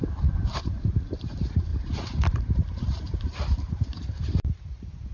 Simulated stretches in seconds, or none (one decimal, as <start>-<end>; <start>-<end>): 0.0-5.1